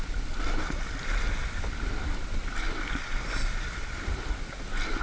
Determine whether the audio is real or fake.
real